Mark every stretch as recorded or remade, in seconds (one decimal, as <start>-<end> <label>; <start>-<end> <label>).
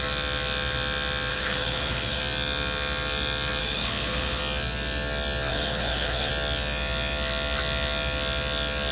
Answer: 0.0-1.3 recorded; 1.3-2.2 remade; 2.2-3.6 recorded; 3.6-4.4 remade; 4.4-5.5 recorded; 5.5-6.3 remade; 6.3-8.9 recorded